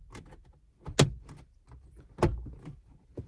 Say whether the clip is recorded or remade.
recorded